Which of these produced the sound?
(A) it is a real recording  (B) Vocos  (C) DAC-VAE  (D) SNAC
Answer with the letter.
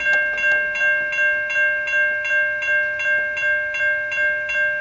A